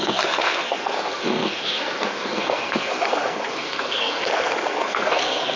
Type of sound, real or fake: fake